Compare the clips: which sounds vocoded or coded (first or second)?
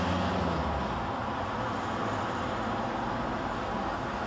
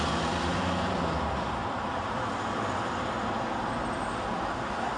second